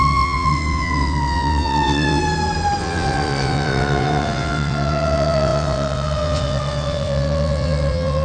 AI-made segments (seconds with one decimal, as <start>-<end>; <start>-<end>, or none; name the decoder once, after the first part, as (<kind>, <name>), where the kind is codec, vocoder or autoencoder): 0.0-2.2 (vocoder, WaveNeXt); 2.8-8.2

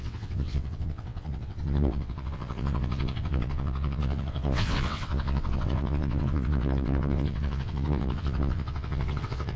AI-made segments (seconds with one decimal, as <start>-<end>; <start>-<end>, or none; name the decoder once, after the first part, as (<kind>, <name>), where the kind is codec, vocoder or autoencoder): 0.0-9.6 (vocoder, WaveNeXt)

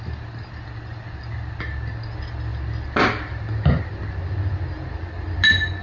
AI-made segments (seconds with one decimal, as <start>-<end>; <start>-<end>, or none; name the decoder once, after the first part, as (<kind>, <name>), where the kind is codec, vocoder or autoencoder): none

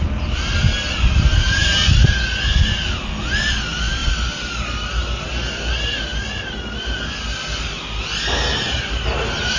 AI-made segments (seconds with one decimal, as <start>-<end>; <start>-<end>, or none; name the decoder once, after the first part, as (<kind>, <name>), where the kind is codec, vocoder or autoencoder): none

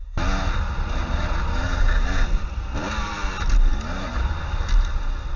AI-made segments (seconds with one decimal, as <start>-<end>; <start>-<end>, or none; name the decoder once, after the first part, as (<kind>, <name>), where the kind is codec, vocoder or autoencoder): none

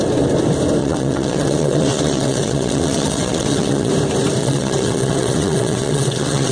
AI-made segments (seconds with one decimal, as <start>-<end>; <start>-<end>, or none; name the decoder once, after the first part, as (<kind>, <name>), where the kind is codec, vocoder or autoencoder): 0.8-3.9 (vocoder, WaveNeXt); 4.4-6.5

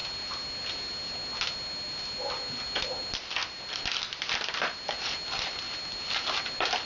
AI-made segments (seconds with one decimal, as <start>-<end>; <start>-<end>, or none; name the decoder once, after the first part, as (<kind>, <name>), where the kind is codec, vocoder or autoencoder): none